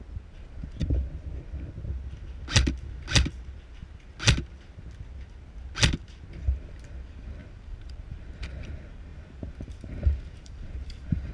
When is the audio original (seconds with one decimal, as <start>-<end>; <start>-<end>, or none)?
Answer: 0.0-7.4; 8.3-9.1